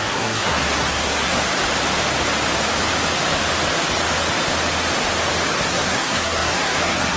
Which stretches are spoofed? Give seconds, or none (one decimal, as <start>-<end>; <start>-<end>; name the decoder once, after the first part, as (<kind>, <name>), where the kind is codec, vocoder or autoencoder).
0.0-1.4 (codec, SNAC); 5.7-7.2